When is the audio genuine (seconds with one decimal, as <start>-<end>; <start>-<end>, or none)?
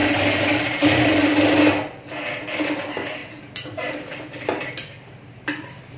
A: 1.3-3.2